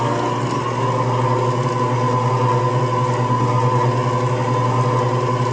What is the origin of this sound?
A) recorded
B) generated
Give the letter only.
A